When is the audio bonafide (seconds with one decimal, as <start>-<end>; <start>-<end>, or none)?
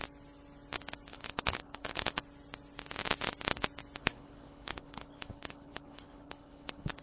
0.0-1.1; 2.2-4.0